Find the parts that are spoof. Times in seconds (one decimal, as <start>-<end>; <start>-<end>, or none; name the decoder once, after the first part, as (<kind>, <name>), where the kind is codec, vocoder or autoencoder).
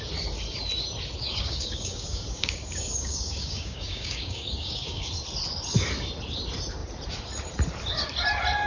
1.2-5.1 (codec, DAC)